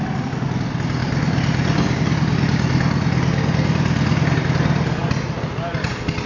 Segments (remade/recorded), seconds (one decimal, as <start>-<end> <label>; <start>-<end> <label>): 0.0-6.3 recorded